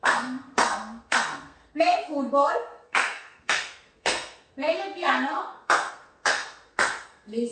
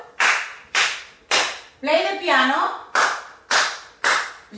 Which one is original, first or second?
second